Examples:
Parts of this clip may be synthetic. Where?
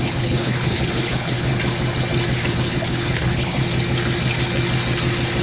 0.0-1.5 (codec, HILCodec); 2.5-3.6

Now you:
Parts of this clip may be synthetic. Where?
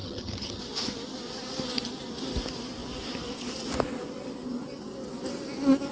0.0-0.6 (vocoder, HiFi-GAN)